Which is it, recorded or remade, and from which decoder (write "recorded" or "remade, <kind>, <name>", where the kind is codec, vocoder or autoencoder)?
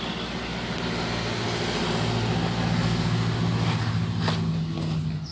recorded